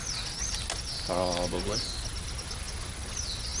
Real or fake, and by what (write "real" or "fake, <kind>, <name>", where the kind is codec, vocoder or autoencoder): real